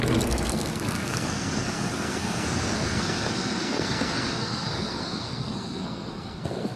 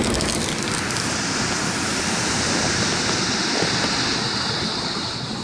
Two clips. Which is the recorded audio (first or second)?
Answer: second